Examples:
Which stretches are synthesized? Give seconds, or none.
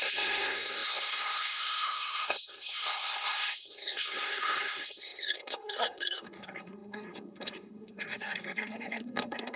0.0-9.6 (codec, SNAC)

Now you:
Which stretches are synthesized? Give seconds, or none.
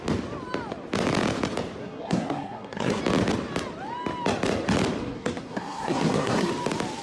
1.8-3.0 (codec, SNAC); 5.0-6.5